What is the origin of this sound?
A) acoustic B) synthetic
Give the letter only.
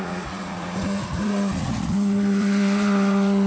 B